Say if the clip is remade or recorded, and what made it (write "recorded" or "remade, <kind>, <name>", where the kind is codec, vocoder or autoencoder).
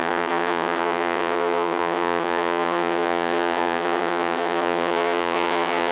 remade, vocoder, HiFi-GAN